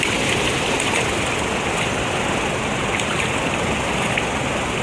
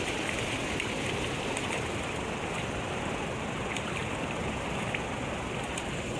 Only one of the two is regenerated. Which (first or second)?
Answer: second